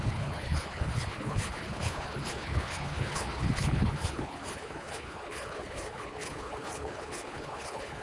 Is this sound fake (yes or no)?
yes